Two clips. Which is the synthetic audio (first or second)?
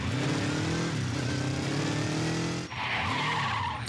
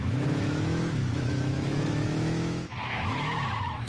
second